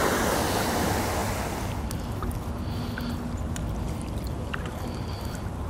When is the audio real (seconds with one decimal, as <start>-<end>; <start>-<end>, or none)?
0.0-5.7